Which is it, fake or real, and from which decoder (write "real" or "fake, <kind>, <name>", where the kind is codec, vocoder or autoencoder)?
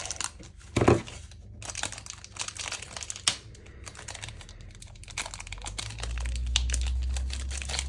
real